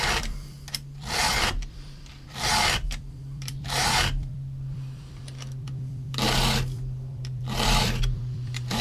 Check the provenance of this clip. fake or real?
fake